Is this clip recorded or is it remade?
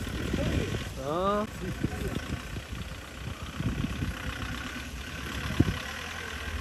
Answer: recorded